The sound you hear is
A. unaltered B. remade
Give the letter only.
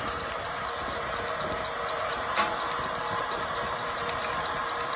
A